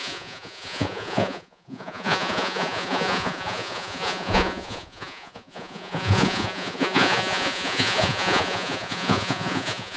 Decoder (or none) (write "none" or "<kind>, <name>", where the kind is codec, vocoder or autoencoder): vocoder, Vocos